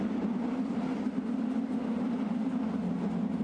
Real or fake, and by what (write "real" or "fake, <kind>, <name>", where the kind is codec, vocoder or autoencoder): real